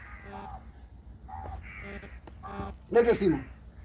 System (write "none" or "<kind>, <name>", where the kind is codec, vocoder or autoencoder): none